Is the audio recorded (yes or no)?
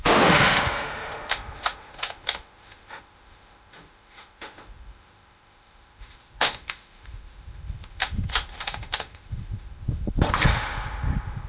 no